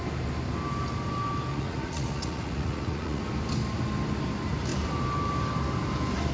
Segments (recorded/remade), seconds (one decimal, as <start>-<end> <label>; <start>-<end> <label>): 0.0-1.5 recorded; 1.5-3.2 remade; 3.2-6.3 recorded